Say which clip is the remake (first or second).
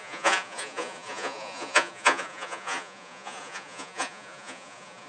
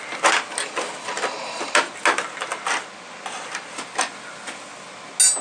first